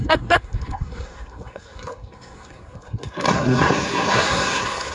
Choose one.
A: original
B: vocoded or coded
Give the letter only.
B